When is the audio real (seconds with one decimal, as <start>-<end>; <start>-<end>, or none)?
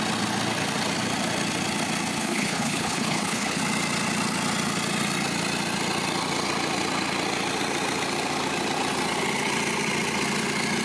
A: 0.0-2.2; 3.6-10.8